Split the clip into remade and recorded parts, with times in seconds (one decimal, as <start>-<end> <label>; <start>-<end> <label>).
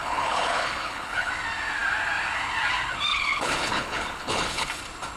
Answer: 0.0-1.3 remade; 1.3-3.1 recorded; 3.1-4.8 remade; 4.8-5.2 recorded